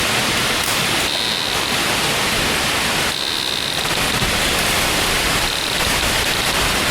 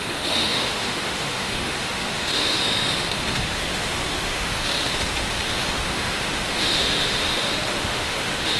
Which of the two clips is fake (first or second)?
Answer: second